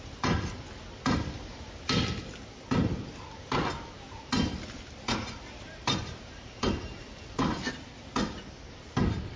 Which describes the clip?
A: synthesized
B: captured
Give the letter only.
B